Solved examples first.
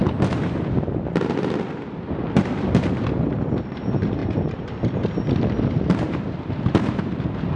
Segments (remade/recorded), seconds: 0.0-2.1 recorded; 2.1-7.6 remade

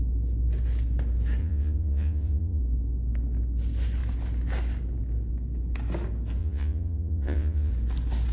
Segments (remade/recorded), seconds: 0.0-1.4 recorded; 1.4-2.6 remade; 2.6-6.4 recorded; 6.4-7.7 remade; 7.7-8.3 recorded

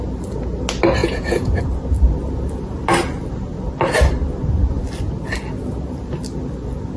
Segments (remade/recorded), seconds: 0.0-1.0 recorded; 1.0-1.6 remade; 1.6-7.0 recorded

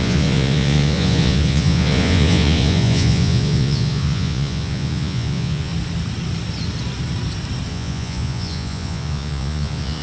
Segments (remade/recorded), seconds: 0.0-5.7 remade; 5.7-7.7 recorded; 7.7-10.0 remade

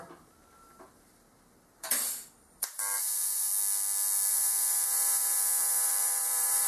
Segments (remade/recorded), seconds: 0.0-3.5 remade; 3.5-4.3 recorded; 4.3-6.7 remade